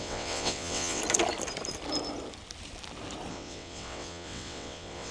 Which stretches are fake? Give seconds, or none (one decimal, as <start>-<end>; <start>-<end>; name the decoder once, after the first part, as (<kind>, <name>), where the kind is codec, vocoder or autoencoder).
0.0-1.0 (vocoder, WaveNeXt); 3.3-5.1